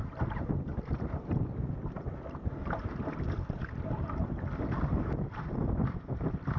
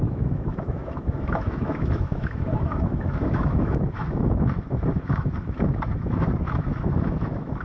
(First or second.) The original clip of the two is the first